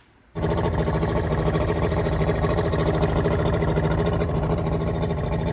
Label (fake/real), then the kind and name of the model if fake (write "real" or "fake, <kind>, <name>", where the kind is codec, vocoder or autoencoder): real